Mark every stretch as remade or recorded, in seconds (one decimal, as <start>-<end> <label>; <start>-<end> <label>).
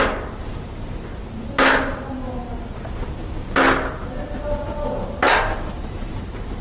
0.0-1.2 remade; 1.2-5.2 recorded; 5.2-6.6 remade